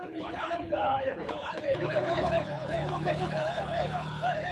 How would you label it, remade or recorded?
remade